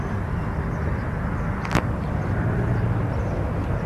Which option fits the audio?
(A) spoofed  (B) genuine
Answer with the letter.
B